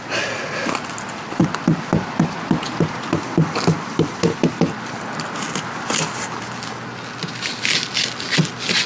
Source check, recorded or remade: recorded